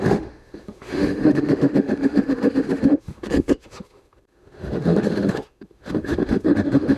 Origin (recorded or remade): remade